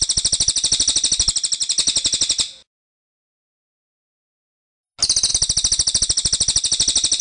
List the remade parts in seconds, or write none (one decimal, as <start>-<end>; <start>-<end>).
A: none